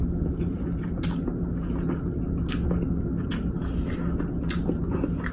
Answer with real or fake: real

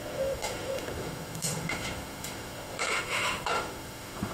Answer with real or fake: fake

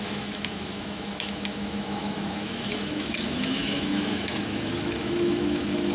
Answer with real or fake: fake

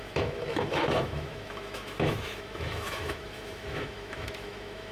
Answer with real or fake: fake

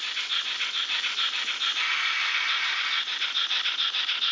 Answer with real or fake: real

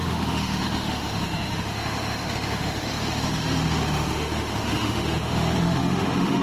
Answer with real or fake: fake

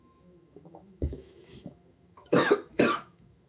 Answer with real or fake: fake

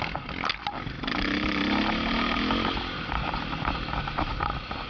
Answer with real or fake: real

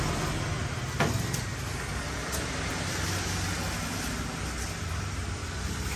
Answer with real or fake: real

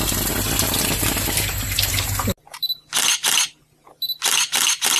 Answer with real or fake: real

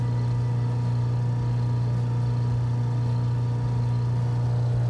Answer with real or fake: real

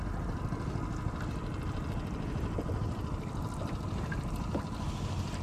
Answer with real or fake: real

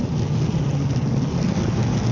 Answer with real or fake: real